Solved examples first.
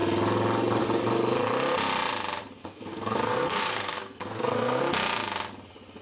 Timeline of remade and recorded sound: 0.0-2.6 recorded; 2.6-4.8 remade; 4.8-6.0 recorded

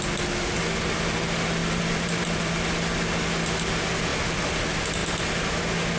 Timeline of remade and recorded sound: 0.0-1.6 recorded; 1.6-2.5 remade; 2.5-6.0 recorded

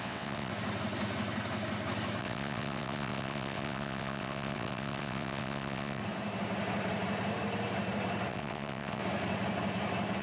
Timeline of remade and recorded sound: 0.0-0.5 remade; 0.5-2.2 recorded; 2.2-6.0 remade; 6.0-8.3 recorded; 8.3-9.0 remade; 9.0-10.2 recorded

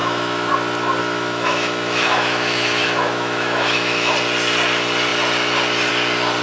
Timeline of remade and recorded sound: 0.0-0.5 remade; 0.5-1.0 recorded; 1.0-4.1 remade; 4.1-6.4 recorded